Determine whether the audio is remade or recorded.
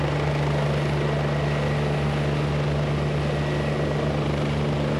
recorded